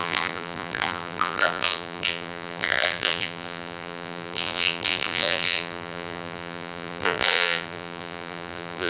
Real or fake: fake